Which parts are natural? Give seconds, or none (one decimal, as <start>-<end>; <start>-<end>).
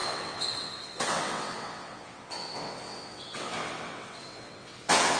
none